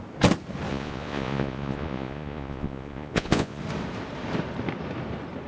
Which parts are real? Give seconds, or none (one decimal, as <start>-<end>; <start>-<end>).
0.0-0.7; 3.6-5.5